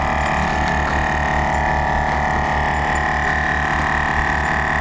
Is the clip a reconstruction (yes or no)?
no